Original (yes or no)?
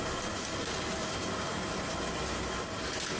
yes